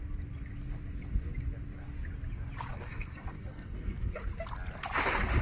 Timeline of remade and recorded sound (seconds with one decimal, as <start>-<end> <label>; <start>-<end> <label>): 0.0-2.7 recorded; 2.7-4.2 remade; 4.2-5.4 recorded